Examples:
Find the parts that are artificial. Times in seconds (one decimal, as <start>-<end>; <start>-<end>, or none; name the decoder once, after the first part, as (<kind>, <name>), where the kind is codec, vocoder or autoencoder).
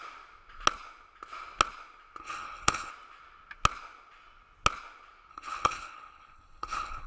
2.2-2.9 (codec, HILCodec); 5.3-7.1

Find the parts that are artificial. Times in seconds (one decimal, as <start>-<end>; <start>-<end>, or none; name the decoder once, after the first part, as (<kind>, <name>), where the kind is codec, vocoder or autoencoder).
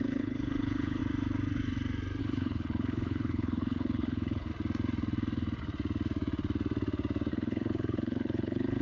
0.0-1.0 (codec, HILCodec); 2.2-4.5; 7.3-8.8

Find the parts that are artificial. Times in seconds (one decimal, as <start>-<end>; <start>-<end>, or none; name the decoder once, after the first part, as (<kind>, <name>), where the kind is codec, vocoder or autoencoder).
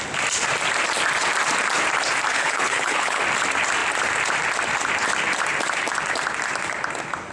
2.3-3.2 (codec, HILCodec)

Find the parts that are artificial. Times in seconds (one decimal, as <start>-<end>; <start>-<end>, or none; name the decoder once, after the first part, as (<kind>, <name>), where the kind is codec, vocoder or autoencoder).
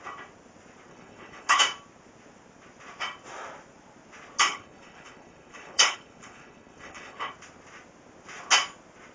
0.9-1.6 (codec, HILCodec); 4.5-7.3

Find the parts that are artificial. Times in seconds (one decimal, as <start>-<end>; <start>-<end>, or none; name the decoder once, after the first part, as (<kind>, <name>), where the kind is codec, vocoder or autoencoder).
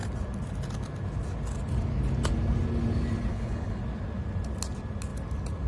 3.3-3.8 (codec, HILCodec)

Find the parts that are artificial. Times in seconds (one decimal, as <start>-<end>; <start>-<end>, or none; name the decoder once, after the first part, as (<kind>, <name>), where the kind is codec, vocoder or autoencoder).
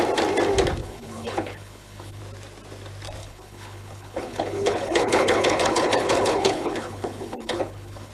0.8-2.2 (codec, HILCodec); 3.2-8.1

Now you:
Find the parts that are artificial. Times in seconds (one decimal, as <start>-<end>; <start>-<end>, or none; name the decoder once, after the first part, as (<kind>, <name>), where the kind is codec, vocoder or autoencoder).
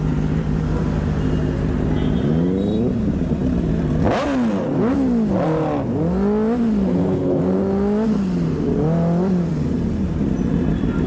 6.9-7.4 (codec, HILCodec)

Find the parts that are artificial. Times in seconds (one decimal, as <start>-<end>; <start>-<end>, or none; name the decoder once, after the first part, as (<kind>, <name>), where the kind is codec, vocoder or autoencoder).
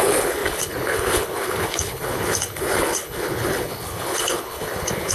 0.0-5.1 (codec, HILCodec)